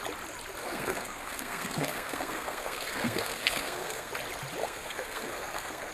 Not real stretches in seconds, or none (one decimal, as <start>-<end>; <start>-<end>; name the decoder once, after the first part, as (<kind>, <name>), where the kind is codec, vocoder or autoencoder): 0.6-4.1 (codec, SNAC); 4.6-5.9